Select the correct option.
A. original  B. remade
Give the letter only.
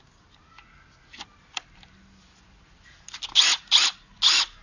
A